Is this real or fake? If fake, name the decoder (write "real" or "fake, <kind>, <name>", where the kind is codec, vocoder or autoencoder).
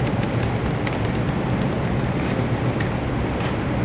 real